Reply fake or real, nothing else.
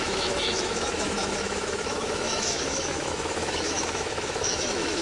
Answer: fake